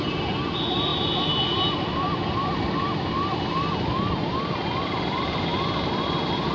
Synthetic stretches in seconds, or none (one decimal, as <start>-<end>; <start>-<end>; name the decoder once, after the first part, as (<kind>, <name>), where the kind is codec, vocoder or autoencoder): none